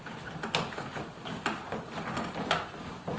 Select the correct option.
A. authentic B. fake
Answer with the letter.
A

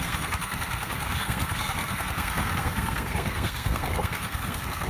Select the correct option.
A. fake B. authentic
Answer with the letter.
A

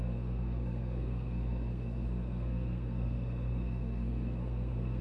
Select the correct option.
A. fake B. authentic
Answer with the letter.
A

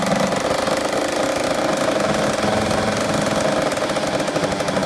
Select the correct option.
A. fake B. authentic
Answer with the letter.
B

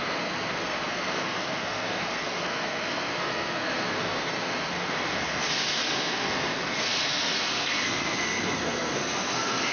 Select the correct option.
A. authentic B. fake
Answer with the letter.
B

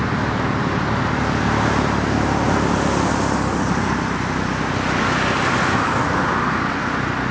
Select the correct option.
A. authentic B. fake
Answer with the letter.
A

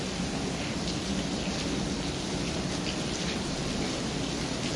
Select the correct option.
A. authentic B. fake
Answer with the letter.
A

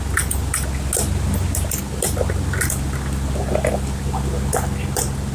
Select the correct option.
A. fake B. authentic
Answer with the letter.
B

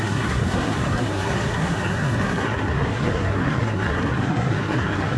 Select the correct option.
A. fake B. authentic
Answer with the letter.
A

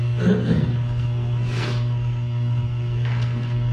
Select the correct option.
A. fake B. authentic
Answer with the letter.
A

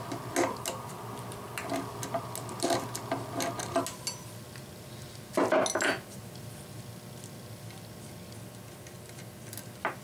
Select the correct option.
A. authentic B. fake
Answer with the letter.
A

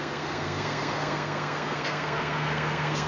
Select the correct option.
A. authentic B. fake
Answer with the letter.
B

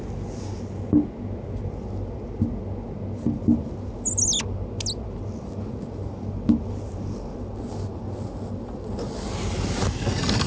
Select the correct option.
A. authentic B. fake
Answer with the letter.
A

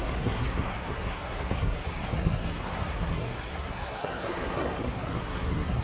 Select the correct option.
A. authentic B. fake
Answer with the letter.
B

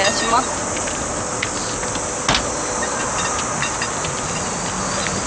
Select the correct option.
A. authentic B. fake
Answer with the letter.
A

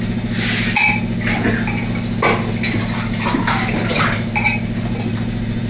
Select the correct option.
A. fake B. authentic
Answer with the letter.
B